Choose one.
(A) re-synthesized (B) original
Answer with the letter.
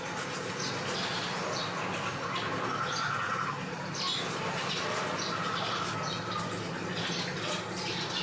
B